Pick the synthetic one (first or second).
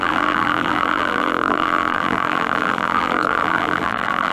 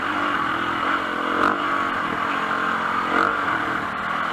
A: first